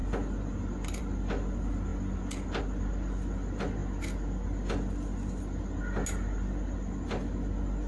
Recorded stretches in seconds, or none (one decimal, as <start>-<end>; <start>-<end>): 0.0-7.9